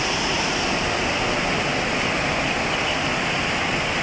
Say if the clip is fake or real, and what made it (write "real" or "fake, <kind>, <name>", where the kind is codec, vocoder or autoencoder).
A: real